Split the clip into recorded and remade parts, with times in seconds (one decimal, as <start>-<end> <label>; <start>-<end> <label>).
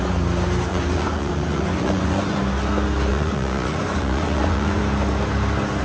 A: 0.0-0.7 recorded; 0.7-2.4 remade; 2.4-3.1 recorded; 3.1-4.8 remade; 4.8-5.8 recorded